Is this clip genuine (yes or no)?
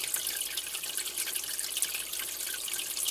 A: yes